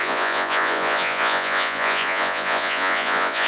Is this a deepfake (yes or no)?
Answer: yes